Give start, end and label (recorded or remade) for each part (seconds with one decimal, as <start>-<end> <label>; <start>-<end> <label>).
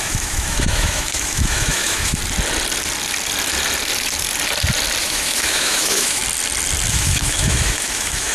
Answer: 0.0-2.2 remade; 2.2-5.0 recorded; 5.0-6.2 remade; 6.2-6.9 recorded; 6.9-8.3 remade